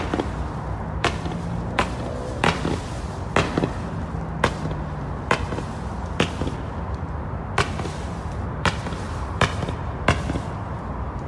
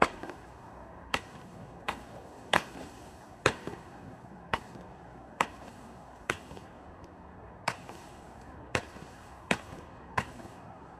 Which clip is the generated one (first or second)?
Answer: second